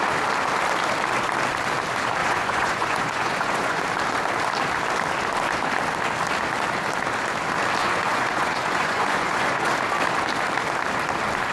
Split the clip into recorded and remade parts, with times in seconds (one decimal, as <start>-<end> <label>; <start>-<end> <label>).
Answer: 0.0-2.2 recorded; 2.2-3.8 remade; 3.8-7.8 recorded; 7.8-9.7 remade; 9.7-11.5 recorded